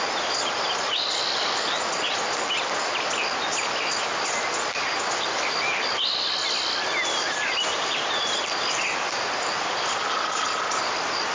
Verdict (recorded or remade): recorded